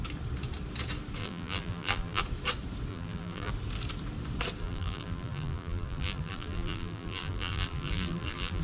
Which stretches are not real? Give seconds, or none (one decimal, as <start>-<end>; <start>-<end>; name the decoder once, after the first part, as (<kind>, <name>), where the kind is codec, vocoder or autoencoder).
1.2-2.2 (vocoder, BigVGAN v2); 2.9-3.5; 4.6-8.6